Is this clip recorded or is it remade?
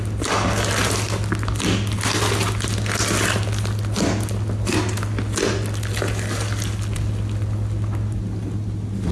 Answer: recorded